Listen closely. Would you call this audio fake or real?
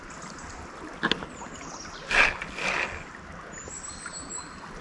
real